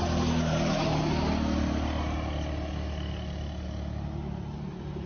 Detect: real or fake real